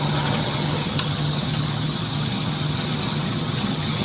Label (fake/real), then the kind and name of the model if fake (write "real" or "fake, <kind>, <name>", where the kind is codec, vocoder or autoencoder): fake, vocoder, HiFi-GAN